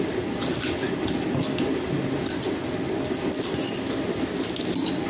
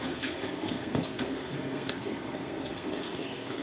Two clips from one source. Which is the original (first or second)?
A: first